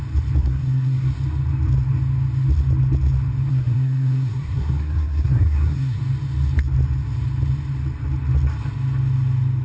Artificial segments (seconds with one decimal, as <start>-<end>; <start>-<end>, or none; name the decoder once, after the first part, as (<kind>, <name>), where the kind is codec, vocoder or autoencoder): 0.4-1.1 (codec, SNAC); 3.5-6.0